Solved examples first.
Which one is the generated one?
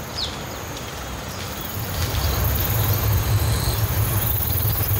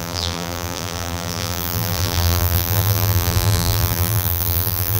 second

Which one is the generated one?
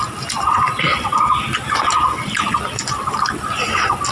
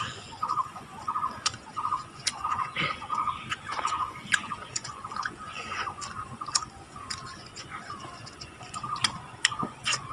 second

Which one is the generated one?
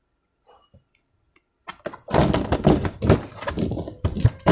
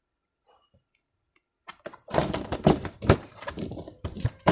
second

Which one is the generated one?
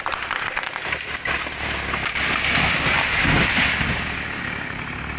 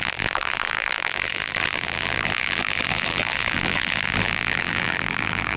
second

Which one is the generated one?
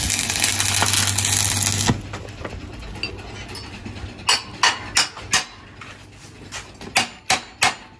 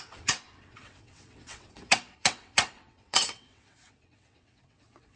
second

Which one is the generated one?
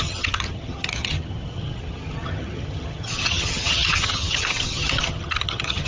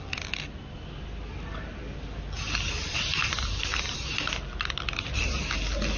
first